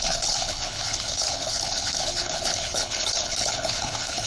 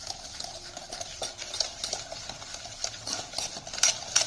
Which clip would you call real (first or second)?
second